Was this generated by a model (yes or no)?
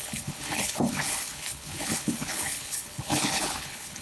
yes